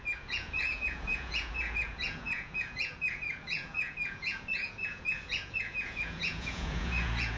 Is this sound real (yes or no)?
no